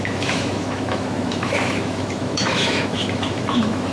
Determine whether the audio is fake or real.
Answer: fake